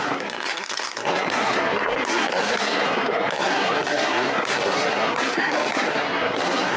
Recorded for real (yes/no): no